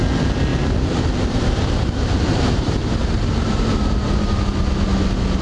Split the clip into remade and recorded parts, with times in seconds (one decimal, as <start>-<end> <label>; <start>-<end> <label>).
0.0-0.5 recorded; 0.5-3.7 remade; 3.7-5.4 recorded